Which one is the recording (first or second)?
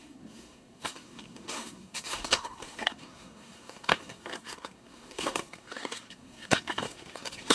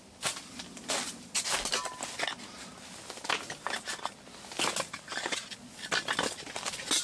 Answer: second